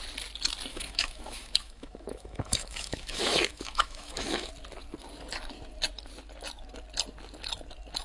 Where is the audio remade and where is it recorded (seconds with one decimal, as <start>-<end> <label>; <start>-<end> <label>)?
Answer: 0.0-0.7 recorded; 0.7-4.5 remade; 4.5-8.0 recorded